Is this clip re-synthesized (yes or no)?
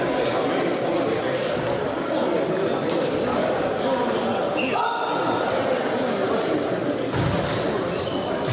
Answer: no